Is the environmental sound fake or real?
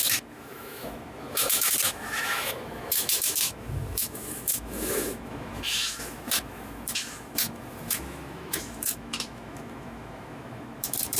fake